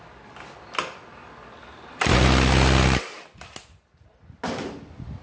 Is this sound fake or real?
real